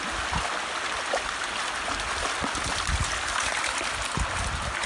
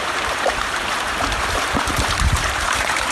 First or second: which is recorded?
first